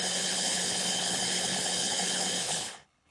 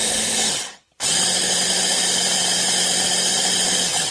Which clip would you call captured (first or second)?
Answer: second